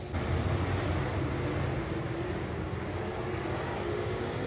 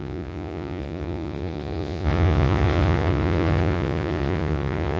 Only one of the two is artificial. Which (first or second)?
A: second